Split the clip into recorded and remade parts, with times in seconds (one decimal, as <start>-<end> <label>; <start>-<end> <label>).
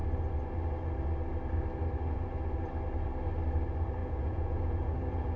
0.0-4.0 recorded; 4.0-5.4 remade